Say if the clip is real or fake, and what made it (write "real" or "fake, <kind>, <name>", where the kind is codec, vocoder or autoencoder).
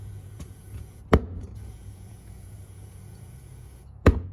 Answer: fake, vocoder, Vocos